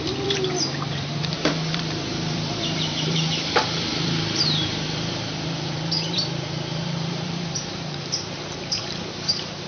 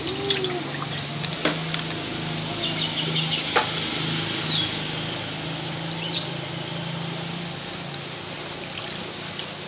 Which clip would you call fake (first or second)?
first